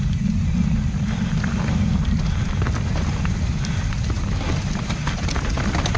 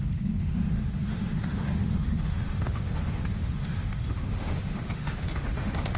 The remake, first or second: second